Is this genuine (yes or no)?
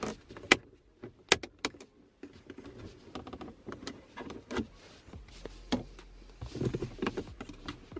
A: yes